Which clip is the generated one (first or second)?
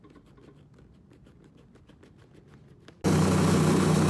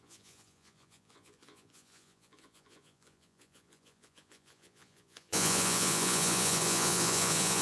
second